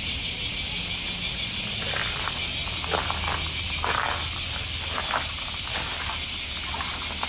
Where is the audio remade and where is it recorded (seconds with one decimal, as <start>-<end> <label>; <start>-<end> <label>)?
0.0-7.3 recorded